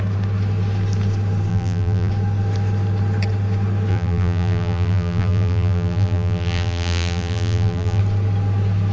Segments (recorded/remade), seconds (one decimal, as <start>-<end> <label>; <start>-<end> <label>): 0.0-1.5 recorded; 1.5-2.1 remade; 2.1-3.9 recorded; 3.9-8.0 remade; 8.0-8.9 recorded